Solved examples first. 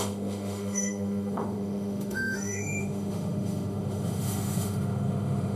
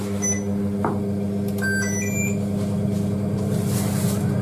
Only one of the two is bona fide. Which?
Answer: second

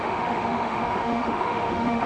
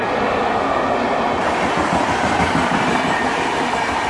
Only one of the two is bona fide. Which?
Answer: second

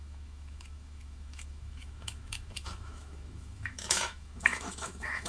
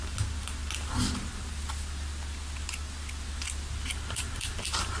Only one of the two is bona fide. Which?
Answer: second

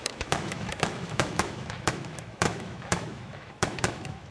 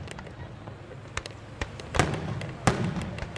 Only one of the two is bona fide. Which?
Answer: second